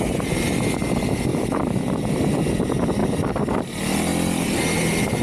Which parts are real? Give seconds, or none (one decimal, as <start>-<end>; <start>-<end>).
3.0-3.5; 4.1-5.2